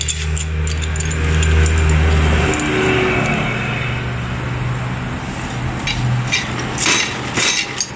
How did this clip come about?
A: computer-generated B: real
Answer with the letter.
B